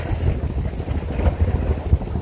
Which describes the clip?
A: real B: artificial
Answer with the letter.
A